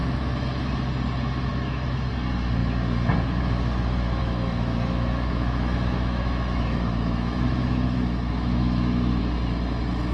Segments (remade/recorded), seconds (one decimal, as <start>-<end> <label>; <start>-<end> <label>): 0.0-0.6 remade; 0.6-1.5 recorded; 1.5-2.1 remade; 2.1-4.2 recorded; 4.2-9.2 remade; 9.2-10.1 recorded